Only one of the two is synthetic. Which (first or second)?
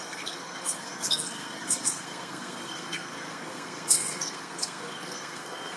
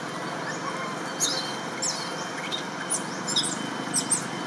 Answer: first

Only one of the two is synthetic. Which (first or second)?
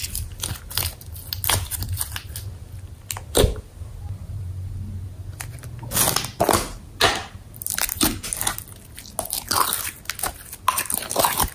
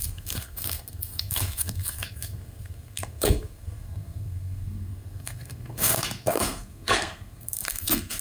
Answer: second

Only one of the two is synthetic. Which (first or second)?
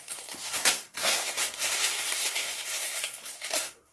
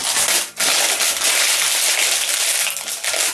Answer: first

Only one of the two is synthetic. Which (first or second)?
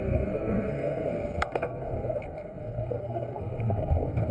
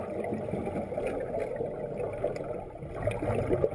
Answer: first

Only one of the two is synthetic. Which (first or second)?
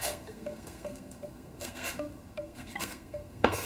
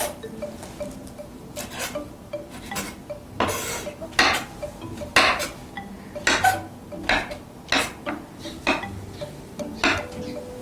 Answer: first